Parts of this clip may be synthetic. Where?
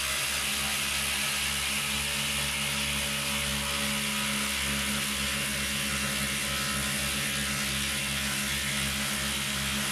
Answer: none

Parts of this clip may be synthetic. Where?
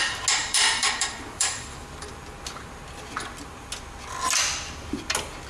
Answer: 0.4-2.2 (vocoder, BigVGAN v2)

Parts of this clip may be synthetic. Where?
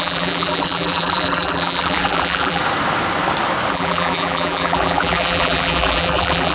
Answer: 0.0-2.6 (vocoder, BigVGAN v2); 3.7-6.5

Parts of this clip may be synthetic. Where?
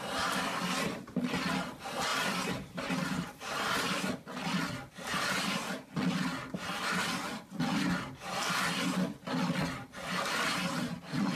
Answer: 2.1-4.1 (vocoder, BigVGAN v2)